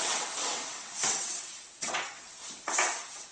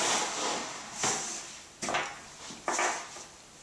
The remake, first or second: first